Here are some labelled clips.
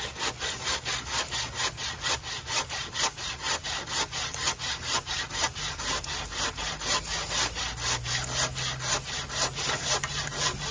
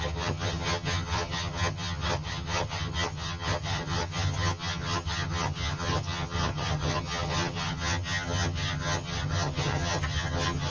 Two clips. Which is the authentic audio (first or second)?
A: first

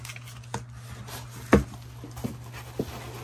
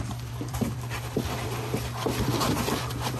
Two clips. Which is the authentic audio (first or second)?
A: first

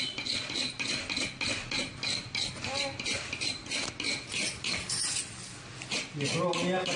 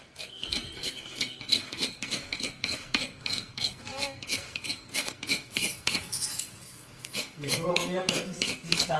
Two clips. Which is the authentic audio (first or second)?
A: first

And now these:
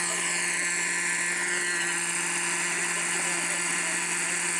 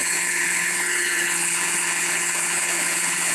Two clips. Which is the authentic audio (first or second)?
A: first